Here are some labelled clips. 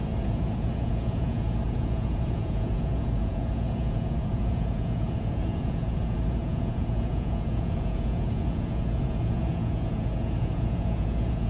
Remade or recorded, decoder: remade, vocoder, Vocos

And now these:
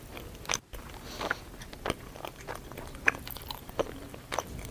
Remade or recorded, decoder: recorded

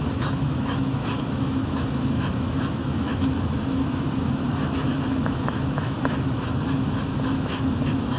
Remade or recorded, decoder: remade, autoencoder, DAC-VAE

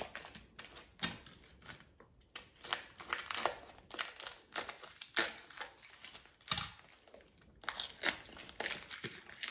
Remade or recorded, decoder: recorded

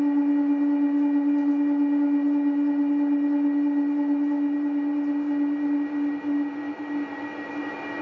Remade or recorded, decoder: recorded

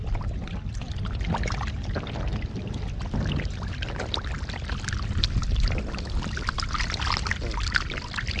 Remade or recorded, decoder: recorded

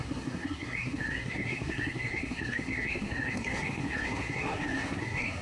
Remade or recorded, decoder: remade, codec, SNAC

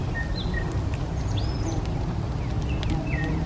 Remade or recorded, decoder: recorded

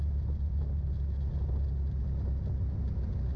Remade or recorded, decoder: recorded